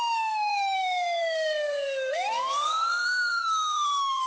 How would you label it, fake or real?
fake